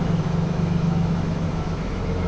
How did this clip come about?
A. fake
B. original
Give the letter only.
A